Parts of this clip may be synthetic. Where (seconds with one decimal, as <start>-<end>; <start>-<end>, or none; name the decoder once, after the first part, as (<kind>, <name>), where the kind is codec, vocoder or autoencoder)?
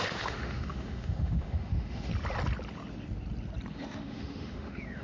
0.0-2.1 (autoencoder, DAC-VAE); 3.7-5.0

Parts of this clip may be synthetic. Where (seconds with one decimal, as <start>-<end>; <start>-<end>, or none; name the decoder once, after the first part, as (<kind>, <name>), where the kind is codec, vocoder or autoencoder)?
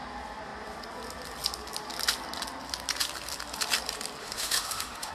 4.2-5.1 (autoencoder, DAC-VAE)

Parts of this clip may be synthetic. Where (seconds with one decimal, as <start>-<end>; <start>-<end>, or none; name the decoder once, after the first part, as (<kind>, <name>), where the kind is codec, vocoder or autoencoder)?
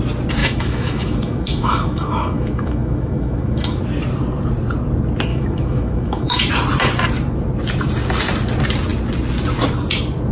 0.4-3.8 (autoencoder, DAC-VAE); 5.3-6.5